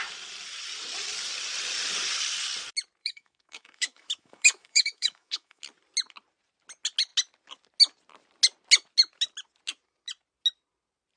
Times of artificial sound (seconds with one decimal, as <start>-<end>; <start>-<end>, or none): 3.0-5.6